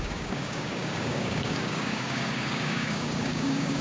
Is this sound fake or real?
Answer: fake